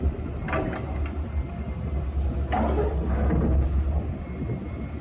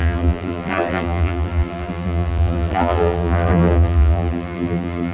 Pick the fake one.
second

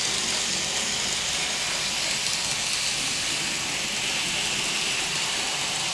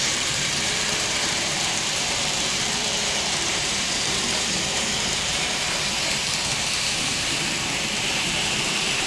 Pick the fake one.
second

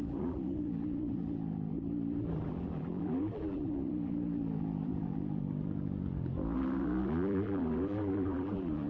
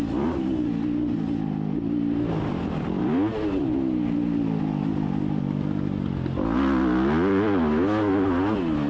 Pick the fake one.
first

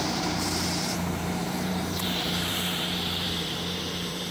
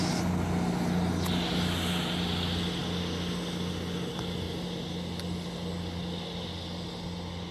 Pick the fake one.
first